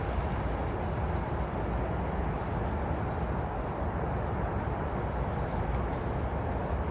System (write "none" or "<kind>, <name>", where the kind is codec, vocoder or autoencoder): none